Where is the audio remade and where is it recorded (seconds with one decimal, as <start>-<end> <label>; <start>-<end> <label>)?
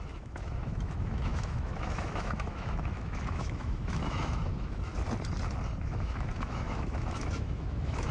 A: 0.0-4.9 remade; 4.9-5.8 recorded; 5.8-8.1 remade